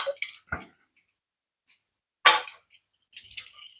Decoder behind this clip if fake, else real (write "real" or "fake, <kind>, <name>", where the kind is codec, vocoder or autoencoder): real